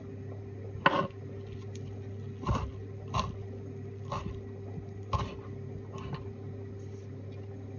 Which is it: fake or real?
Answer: real